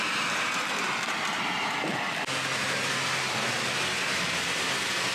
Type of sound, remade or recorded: recorded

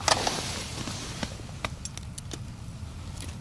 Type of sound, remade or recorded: recorded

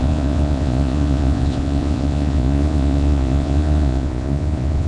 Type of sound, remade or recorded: remade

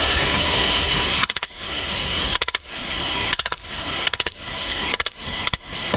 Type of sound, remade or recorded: remade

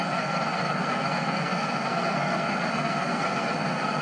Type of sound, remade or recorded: remade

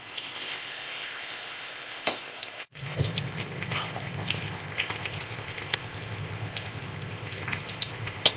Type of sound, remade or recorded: remade